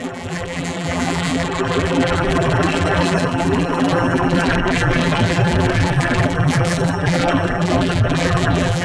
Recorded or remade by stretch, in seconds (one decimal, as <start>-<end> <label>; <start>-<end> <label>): 0.0-8.8 remade

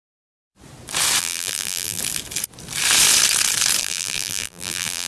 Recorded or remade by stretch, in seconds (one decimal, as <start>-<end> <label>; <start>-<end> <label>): 0.0-1.2 recorded; 1.2-2.0 remade; 2.0-3.8 recorded; 3.8-5.1 remade

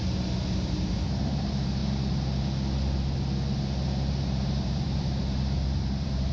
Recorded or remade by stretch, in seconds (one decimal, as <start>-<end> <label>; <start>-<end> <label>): 0.0-1.8 remade; 1.8-4.1 recorded; 4.1-6.3 remade

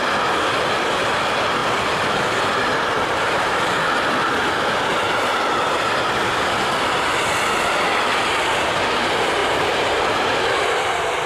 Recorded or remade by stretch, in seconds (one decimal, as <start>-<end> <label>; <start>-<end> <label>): 0.0-9.4 recorded; 9.4-10.7 remade; 10.7-11.3 recorded

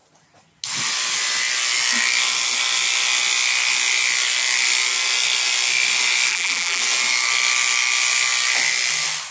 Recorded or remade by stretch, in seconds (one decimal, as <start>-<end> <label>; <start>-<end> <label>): 0.0-6.3 recorded; 6.3-6.8 remade; 6.8-9.3 recorded

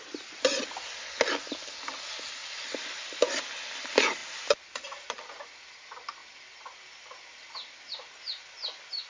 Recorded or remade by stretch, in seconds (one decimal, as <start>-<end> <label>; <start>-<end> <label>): 0.0-4.2 recorded; 4.2-5.7 remade; 5.7-9.1 recorded